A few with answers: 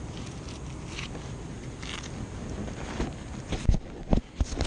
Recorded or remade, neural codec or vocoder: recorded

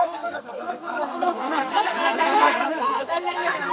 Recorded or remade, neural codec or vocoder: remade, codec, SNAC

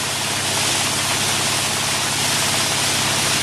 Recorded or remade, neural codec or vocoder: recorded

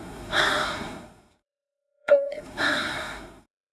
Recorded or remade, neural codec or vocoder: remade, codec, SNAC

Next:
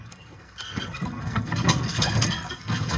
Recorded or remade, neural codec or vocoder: remade, codec, SNAC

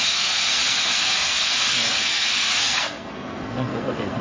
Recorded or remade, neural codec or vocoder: remade, codec, SNAC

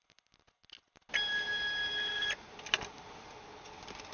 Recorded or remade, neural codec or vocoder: recorded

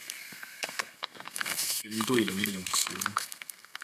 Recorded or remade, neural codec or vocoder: remade, codec, SNAC